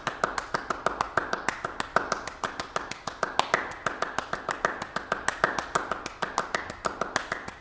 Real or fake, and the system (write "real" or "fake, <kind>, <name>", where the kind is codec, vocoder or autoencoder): real